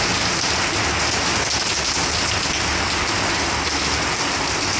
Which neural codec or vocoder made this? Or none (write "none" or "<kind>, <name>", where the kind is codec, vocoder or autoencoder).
none